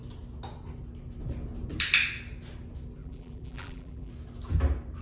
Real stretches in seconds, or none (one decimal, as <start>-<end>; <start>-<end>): 0.0-3.0; 4.1-5.0